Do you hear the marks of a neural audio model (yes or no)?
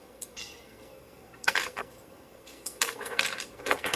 yes